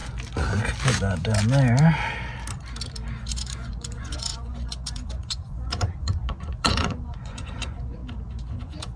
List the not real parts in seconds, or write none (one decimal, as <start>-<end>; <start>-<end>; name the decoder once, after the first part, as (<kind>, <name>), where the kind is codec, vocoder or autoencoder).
3.3-8.0 (vocoder, Vocos); 8.6-9.0